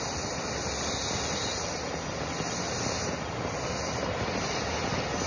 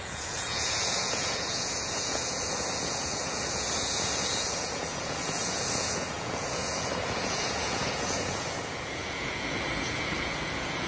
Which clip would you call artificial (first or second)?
second